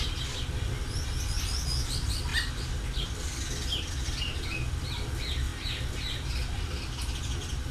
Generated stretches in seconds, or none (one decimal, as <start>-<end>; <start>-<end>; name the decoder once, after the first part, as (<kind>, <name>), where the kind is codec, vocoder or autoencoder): none